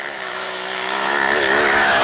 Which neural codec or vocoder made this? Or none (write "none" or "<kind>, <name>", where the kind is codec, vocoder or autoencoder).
autoencoder, DAC-VAE